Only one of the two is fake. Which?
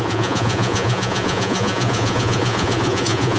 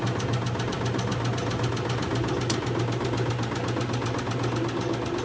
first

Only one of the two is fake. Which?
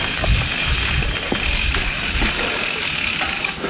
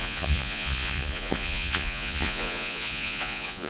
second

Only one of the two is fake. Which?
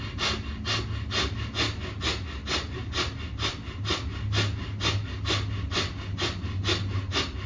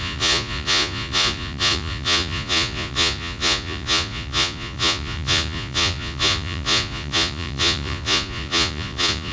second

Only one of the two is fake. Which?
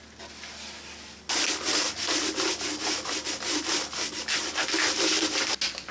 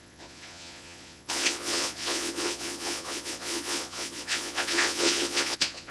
second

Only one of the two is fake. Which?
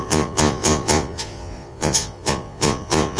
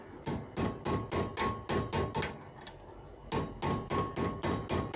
first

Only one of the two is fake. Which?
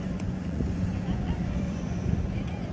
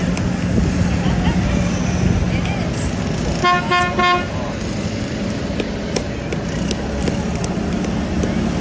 first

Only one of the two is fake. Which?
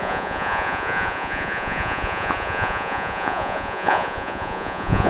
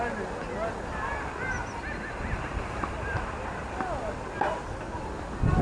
first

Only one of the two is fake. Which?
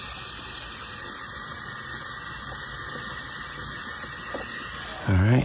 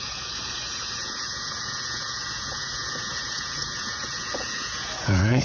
second